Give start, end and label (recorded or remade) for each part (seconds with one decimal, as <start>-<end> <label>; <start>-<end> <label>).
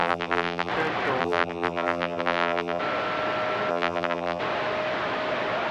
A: 0.0-0.7 remade; 0.7-1.2 recorded; 1.2-2.8 remade; 2.8-3.7 recorded; 3.7-4.4 remade; 4.4-5.7 recorded